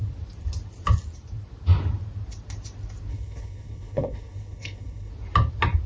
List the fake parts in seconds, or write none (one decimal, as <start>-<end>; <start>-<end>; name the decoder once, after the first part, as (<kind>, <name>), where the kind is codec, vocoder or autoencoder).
3.1-5.1 (codec, HILCodec)